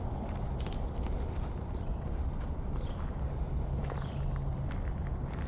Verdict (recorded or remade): remade